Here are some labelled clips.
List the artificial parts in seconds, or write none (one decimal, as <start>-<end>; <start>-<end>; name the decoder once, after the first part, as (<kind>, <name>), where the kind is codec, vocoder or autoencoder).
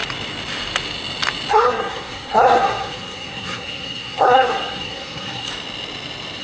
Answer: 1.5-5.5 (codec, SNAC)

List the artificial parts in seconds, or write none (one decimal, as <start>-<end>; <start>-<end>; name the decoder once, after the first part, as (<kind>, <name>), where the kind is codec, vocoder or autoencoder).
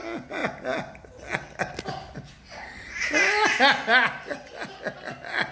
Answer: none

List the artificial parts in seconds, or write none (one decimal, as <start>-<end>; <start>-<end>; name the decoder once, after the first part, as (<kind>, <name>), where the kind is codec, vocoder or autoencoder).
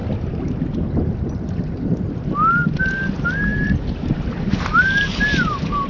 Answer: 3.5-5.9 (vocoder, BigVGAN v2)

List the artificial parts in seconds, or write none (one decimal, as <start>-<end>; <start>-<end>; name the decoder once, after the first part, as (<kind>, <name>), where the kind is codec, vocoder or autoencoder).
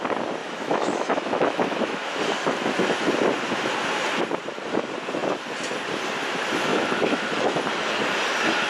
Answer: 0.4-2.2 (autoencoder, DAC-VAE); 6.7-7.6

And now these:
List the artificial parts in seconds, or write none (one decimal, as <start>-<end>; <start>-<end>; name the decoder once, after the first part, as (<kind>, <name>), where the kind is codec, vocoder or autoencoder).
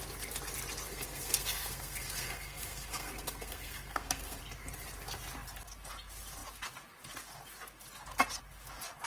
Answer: 0.9-4.4 (codec, SNAC)